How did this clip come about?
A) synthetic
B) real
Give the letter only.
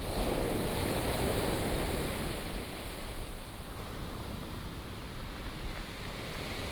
B